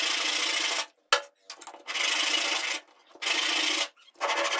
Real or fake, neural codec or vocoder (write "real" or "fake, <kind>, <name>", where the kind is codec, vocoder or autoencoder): real